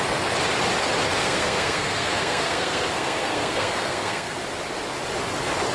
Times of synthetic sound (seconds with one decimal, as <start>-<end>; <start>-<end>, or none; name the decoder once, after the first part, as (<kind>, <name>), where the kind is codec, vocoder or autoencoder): 1.2-4.4 (codec, SNAC)